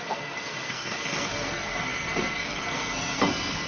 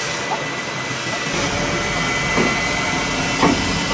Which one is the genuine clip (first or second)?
second